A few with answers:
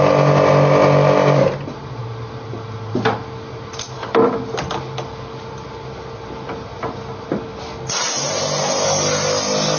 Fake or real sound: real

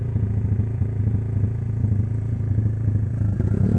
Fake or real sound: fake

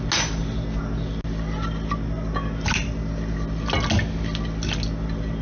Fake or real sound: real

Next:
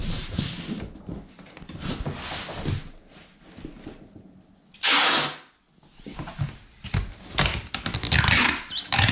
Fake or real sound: real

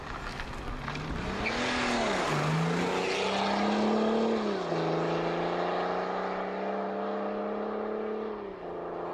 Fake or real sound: real